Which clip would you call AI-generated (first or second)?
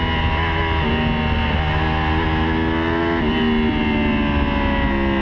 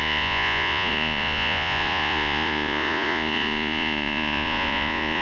second